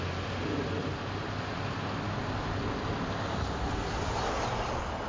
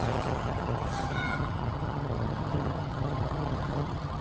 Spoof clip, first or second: second